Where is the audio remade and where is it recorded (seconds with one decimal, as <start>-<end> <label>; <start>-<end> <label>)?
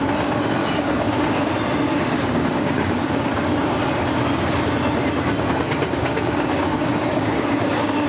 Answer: 0.0-0.6 recorded; 0.6-1.5 remade; 1.5-1.9 recorded; 1.9-3.8 remade; 3.8-6.0 recorded; 6.0-8.1 remade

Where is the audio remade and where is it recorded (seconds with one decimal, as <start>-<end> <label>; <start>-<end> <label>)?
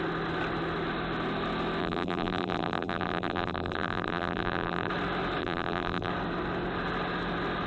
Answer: 0.0-1.8 recorded; 1.8-4.9 remade; 4.9-5.4 recorded; 5.4-6.1 remade; 6.1-7.7 recorded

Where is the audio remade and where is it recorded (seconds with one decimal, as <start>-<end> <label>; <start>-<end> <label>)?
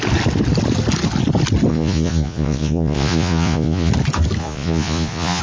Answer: 0.0-1.7 recorded; 1.7-3.9 remade; 3.9-4.4 recorded; 4.4-5.4 remade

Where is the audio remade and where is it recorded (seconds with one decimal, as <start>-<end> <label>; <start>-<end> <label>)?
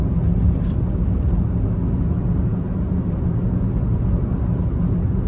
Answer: 0.0-5.3 recorded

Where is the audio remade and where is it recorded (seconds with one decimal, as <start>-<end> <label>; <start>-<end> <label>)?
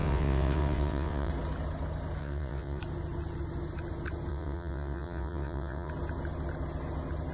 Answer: 0.0-1.3 remade; 1.3-2.2 recorded; 2.2-2.8 remade; 2.8-4.3 recorded; 4.3-5.9 remade; 5.9-7.3 recorded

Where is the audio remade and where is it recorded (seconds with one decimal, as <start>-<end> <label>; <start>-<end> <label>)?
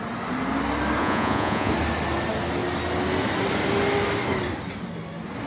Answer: 0.0-1.0 recorded; 1.0-1.7 remade; 1.7-5.5 recorded